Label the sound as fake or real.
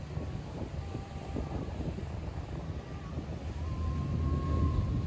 real